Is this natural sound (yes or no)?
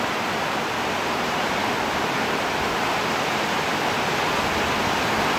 yes